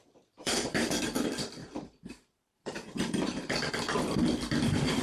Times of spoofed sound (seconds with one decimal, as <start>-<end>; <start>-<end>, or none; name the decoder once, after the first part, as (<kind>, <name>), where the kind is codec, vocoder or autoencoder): 0.4-1.0 (vocoder, BigVGAN v2); 1.6-3.7